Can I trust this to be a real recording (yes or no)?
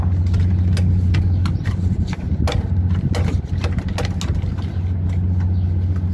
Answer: yes